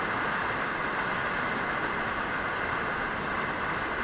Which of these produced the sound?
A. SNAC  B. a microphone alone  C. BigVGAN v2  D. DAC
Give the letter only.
B